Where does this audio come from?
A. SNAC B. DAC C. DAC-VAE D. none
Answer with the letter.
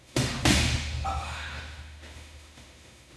C